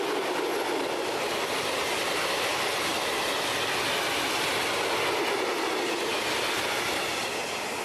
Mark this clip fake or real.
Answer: real